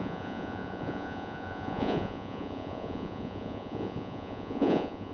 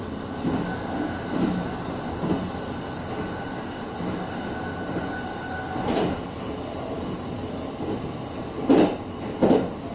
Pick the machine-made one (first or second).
first